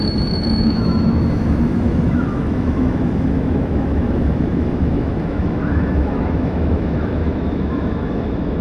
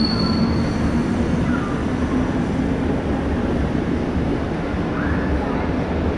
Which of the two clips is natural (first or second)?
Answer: second